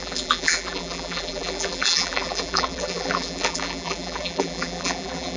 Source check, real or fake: fake